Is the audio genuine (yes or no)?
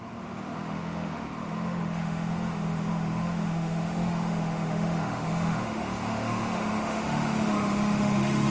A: no